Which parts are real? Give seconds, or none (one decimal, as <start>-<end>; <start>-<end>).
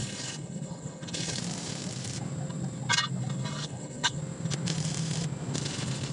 1.4-3.6; 4.2-6.1